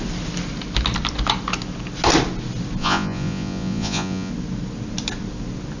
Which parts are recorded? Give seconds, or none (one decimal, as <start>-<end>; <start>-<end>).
0.0-2.8; 4.3-5.8